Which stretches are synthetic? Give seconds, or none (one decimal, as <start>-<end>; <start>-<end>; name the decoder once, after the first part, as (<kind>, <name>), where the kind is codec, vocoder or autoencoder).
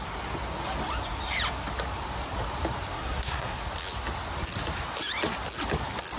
2.9-3.6 (codec, SNAC)